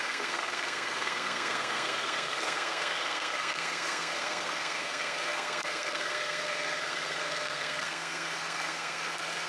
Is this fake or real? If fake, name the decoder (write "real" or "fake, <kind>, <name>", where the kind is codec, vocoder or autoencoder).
fake, codec, SNAC